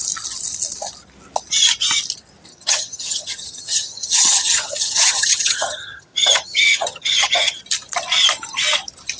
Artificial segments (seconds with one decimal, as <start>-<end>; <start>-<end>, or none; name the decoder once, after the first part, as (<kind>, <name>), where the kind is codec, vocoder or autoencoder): 2.5-7.6 (vocoder, HiFi-GAN)